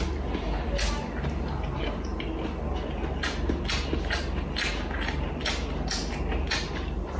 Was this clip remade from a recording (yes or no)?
no